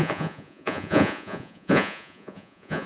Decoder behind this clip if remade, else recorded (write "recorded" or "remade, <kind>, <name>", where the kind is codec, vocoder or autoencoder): remade, vocoder, Vocos